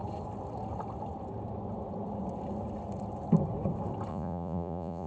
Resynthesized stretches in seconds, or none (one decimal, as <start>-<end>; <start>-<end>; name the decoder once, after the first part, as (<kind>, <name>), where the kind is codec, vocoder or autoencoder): 4.1-5.1 (vocoder, Vocos)